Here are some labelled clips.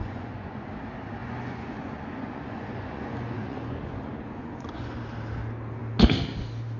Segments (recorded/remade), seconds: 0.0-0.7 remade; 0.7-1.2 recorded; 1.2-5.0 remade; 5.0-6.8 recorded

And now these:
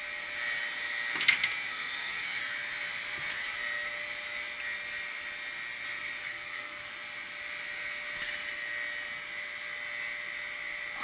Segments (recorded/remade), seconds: 0.0-1.7 recorded; 1.7-2.4 remade; 2.4-6.2 recorded; 6.2-6.9 remade; 6.9-11.0 recorded

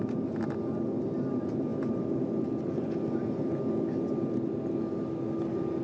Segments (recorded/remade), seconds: 0.0-5.8 recorded

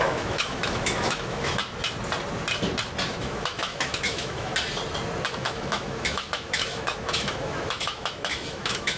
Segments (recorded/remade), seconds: 0.0-1.6 remade; 1.6-3.1 recorded; 3.1-4.5 remade; 4.5-5.3 recorded; 5.3-9.0 remade

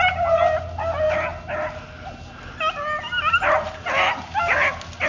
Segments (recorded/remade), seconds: 0.0-5.1 recorded

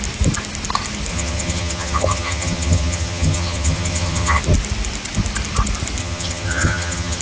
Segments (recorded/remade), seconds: 0.0-1.1 recorded; 1.1-4.4 remade; 4.4-6.0 recorded; 6.0-7.2 remade